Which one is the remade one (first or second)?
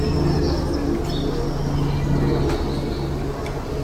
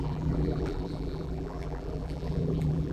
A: second